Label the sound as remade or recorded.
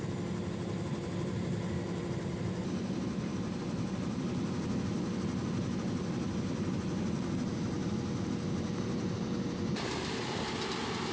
recorded